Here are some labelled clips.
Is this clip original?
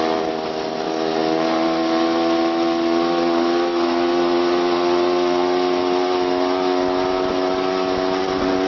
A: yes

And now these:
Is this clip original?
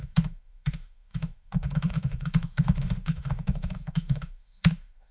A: no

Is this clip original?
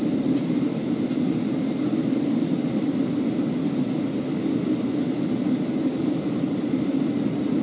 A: yes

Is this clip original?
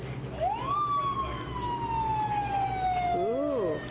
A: yes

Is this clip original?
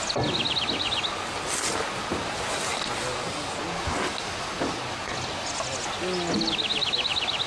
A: yes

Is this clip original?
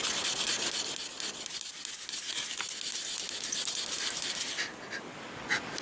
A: yes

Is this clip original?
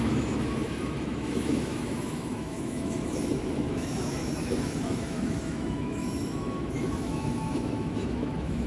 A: no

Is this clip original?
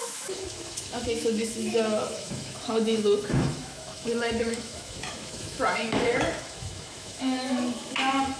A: no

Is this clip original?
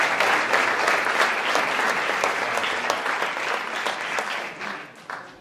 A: yes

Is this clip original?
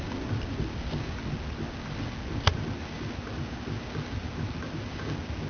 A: yes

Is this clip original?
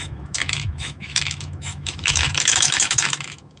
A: no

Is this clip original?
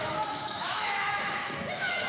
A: no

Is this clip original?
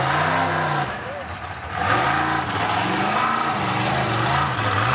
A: yes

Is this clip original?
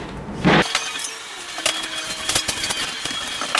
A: yes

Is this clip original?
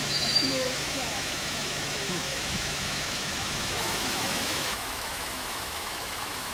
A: no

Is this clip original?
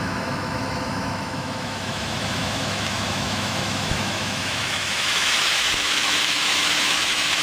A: no